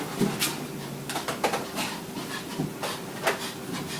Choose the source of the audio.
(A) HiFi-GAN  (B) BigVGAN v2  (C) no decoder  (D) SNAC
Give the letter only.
B